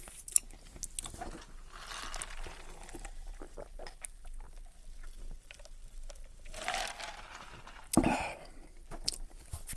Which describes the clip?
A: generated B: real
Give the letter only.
B